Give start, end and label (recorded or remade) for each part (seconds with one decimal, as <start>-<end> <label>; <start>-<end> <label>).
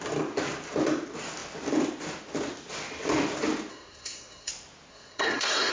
0.0-3.7 recorded; 3.7-4.5 remade; 4.5-4.9 recorded; 4.9-5.7 remade